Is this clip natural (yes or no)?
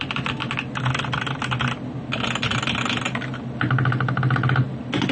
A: yes